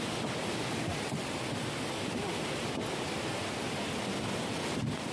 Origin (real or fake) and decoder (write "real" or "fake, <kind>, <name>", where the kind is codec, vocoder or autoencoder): real